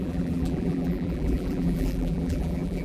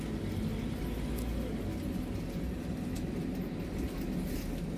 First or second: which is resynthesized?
first